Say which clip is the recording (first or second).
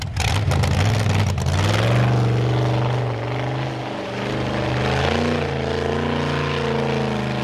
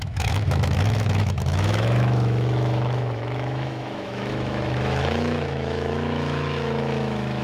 first